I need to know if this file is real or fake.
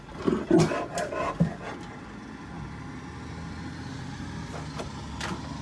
real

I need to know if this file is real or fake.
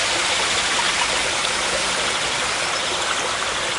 real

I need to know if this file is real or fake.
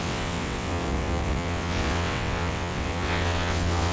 fake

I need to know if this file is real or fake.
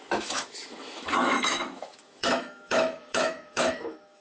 fake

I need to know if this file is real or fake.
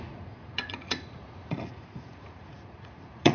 fake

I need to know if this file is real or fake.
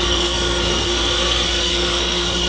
fake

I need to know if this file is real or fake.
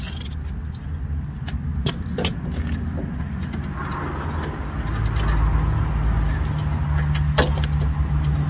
real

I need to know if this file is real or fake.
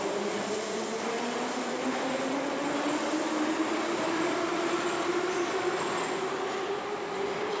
real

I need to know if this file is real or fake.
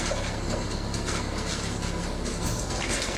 fake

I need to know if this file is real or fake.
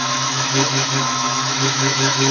fake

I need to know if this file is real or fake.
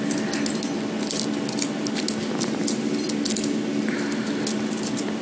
real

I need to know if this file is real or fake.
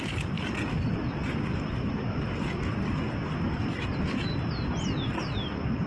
real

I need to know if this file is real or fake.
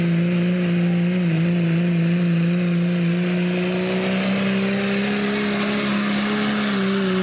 real